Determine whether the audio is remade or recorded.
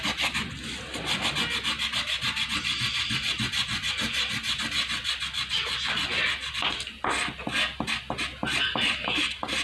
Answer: recorded